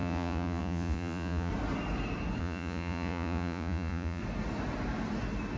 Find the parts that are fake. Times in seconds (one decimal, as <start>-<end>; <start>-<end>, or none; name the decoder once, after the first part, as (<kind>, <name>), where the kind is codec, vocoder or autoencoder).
0.0-1.5 (vocoder, Vocos); 2.4-4.2